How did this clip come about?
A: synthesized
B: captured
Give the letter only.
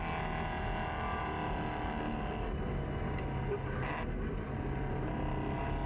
B